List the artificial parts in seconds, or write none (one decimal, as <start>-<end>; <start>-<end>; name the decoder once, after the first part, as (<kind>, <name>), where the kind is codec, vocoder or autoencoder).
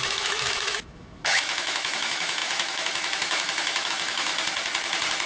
0.0-4.3 (autoencoder, DAC-VAE)